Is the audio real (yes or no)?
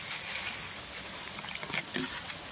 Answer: yes